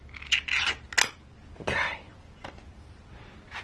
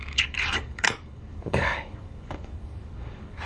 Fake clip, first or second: second